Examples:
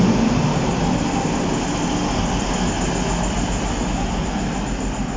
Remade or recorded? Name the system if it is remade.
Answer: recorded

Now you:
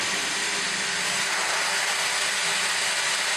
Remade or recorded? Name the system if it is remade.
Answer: recorded